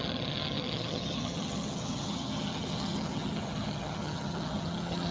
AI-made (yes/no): yes